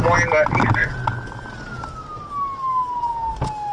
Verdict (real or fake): real